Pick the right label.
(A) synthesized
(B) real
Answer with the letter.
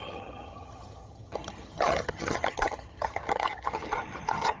A